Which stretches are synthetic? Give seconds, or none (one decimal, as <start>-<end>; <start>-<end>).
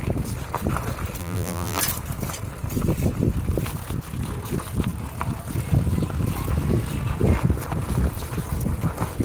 1.2-1.8